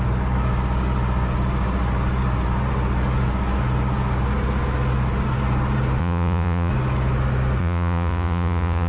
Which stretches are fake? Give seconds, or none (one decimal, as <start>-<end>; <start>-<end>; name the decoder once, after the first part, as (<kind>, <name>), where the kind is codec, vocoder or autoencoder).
6.0-6.7 (vocoder, Vocos); 7.6-8.9